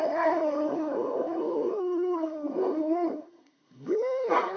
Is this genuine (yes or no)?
no